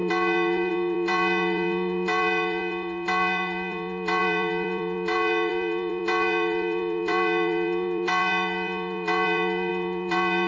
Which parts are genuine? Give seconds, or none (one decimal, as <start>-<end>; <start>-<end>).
none